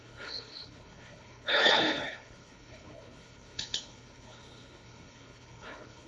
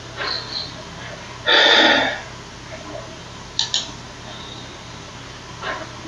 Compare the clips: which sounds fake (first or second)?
first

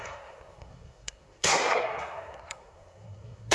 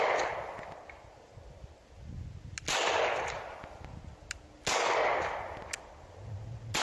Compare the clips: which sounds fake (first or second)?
first